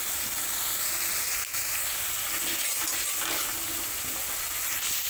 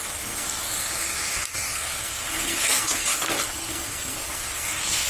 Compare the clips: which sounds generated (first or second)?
second